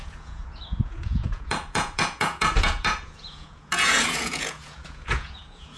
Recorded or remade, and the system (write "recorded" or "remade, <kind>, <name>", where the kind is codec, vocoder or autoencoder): remade, vocoder, Vocos